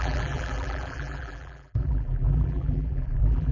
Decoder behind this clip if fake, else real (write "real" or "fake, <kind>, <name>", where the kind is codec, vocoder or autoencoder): fake, vocoder, BigVGAN v2